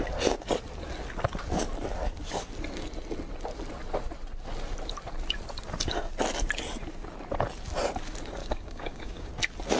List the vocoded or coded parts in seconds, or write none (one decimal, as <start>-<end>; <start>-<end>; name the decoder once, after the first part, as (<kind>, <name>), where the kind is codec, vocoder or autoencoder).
8.4-9.3 (codec, DAC)